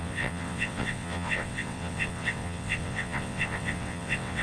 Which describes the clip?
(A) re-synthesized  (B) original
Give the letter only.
A